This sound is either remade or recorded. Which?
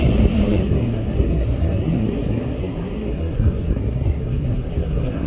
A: remade